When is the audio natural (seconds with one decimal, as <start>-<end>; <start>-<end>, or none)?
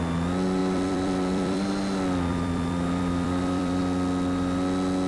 0.0-0.6; 1.7-2.3; 3.8-5.1